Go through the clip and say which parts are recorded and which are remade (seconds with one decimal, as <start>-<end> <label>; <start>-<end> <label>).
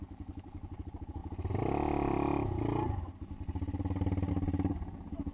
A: 0.0-5.3 recorded